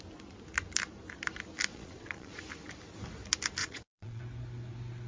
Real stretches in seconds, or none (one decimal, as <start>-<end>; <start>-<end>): 0.0-1.7; 2.4-3.6; 4.2-5.1